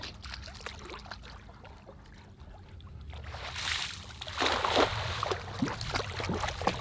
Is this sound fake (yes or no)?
no